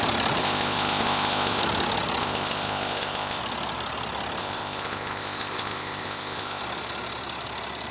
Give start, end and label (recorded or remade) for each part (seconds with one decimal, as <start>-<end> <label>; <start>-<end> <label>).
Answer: 0.0-0.4 recorded; 0.4-1.6 remade; 1.6-2.2 recorded; 2.2-3.4 remade; 3.4-4.4 recorded; 4.4-6.6 remade; 6.6-7.9 recorded